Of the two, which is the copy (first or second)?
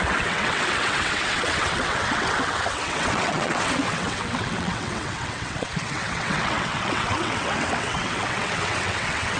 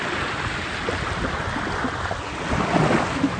first